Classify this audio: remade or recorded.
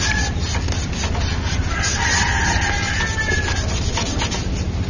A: recorded